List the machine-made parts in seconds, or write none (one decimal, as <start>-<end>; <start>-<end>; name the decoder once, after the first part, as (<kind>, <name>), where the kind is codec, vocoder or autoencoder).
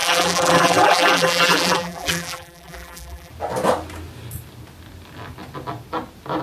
0.0-3.3 (vocoder, BigVGAN v2)